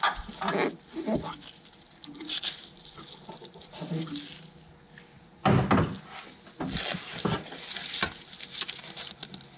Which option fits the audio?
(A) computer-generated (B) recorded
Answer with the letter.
B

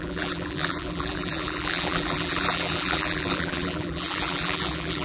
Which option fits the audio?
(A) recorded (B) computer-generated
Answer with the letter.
B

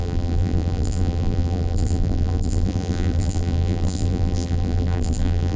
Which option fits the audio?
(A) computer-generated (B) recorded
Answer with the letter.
A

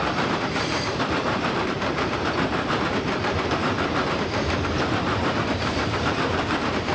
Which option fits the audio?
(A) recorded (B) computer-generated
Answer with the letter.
B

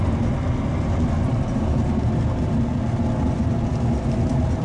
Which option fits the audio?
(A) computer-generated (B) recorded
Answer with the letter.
B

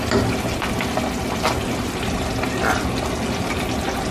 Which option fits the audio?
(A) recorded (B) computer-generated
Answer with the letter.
A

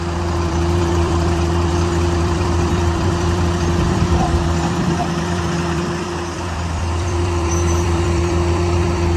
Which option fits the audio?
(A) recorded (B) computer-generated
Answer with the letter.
B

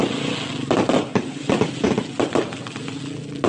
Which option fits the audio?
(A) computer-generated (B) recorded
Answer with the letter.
B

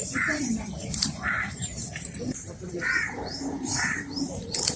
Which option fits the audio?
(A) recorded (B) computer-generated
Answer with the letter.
B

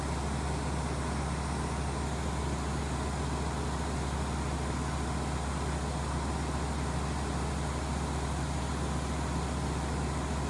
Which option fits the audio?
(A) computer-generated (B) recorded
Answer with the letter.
B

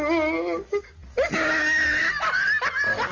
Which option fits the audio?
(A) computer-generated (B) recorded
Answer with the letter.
B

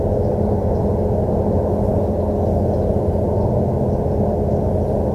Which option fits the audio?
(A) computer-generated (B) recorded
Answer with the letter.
B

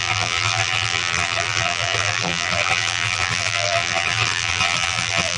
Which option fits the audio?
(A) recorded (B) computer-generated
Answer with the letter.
B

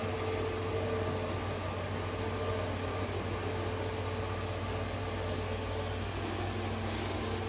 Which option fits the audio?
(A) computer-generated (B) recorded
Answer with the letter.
B